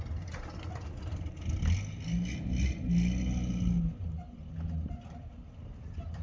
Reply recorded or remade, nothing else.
recorded